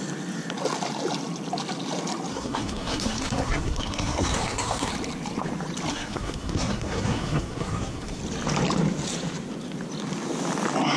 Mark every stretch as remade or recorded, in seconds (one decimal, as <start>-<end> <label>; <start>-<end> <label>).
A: 0.0-2.3 recorded; 2.3-4.9 remade; 4.9-5.9 recorded; 5.9-8.2 remade; 8.2-11.0 recorded